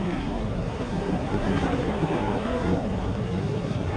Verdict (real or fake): fake